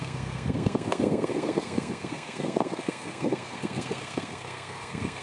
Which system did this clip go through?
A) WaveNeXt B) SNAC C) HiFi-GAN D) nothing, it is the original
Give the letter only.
B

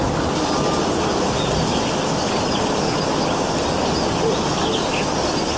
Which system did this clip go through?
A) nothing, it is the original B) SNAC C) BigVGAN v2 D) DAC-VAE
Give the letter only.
A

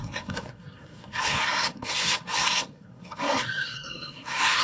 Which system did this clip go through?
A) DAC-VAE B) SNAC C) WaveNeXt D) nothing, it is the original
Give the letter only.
B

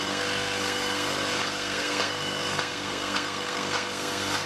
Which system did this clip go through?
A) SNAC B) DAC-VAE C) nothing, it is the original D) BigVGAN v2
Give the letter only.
A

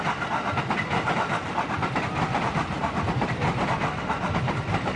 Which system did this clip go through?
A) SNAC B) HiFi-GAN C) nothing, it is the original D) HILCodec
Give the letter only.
C